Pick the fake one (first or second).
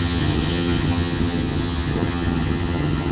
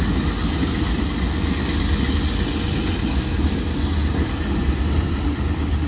first